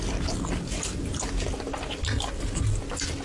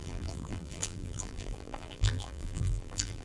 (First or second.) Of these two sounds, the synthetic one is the second